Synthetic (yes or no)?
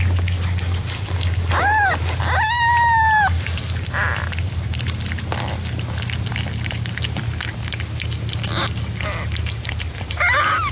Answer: no